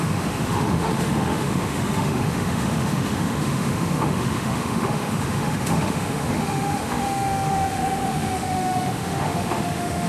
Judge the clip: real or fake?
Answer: fake